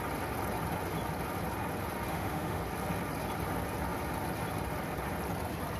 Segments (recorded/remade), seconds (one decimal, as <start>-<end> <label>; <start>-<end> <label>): 0.0-2.1 recorded; 2.1-2.6 remade; 2.6-5.8 recorded

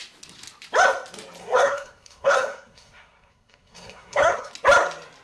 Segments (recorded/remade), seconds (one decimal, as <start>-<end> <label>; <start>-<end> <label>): 0.0-1.4 recorded; 1.4-4.5 remade; 4.5-5.2 recorded

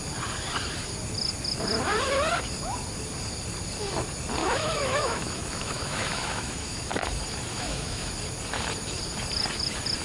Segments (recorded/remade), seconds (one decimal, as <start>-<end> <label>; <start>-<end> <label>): 0.0-4.4 recorded; 4.4-6.9 remade; 6.9-7.5 recorded; 7.5-8.1 remade; 8.1-10.0 recorded

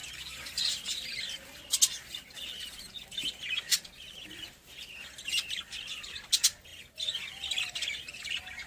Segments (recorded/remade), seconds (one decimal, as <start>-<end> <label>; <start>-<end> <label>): 0.0-8.7 recorded

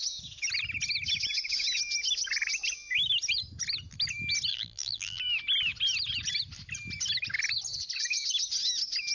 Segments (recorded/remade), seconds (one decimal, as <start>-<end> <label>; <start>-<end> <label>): 0.0-4.5 recorded; 4.5-5.2 remade; 5.2-9.1 recorded

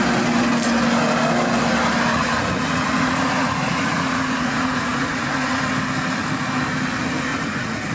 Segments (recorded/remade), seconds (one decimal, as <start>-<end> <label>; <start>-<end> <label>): 0.0-2.1 recorded; 2.1-5.6 remade; 5.6-7.3 recorded; 7.3-7.9 remade

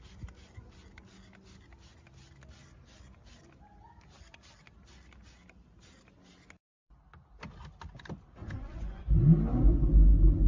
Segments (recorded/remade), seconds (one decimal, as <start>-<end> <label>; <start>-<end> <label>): 0.0-8.4 recorded; 8.4-9.0 remade; 9.0-10.5 recorded